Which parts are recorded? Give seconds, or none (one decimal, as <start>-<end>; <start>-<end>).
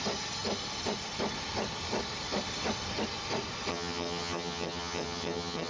0.0-3.7